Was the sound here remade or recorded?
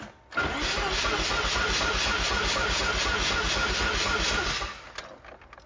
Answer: recorded